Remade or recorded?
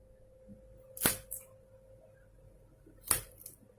recorded